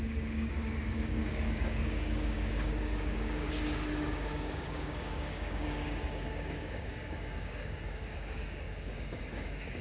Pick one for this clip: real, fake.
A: fake